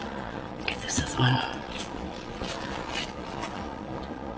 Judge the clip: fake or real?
fake